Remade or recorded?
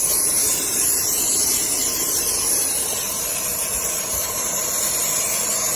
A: remade